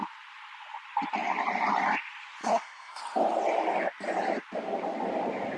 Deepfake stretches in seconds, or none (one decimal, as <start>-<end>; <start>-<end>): 2.4-3.0